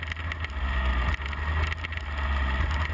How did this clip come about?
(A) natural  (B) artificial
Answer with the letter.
A